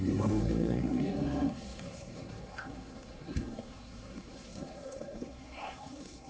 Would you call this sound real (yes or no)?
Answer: no